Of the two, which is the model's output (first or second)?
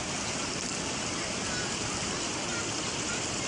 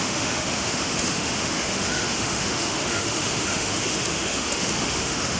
second